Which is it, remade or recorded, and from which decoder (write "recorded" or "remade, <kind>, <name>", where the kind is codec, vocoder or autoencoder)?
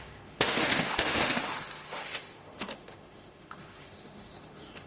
remade, autoencoder, DAC-VAE